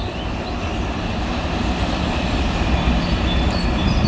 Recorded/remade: recorded